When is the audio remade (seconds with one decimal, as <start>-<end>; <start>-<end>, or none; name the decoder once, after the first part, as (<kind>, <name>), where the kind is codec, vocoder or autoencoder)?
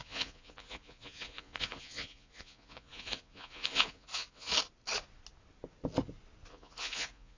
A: 0.0-4.5 (vocoder, Vocos); 6.5-7.4